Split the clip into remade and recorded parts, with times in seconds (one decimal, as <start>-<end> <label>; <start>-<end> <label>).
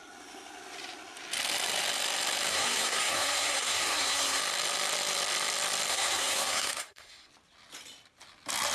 0.0-2.5 recorded; 2.5-4.4 remade; 4.4-5.9 recorded; 5.9-7.3 remade; 7.3-8.7 recorded